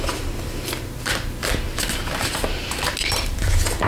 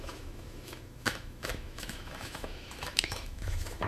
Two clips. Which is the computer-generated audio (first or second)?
second